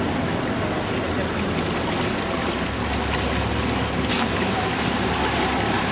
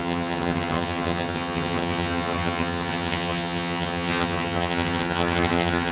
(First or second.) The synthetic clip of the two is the second